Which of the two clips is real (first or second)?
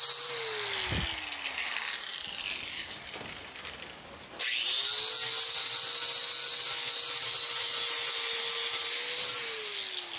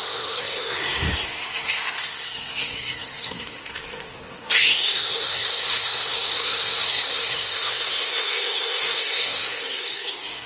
first